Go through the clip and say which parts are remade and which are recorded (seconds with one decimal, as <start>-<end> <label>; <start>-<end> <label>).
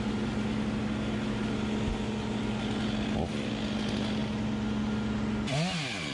0.0-6.1 recorded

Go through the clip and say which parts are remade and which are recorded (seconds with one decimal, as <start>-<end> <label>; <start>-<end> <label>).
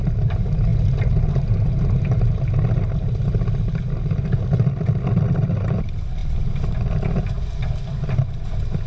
0.0-8.9 recorded